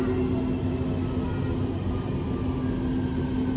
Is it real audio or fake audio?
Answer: real